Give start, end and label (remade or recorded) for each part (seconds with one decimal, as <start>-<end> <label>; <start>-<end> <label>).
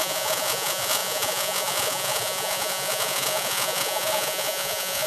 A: 0.0-5.1 remade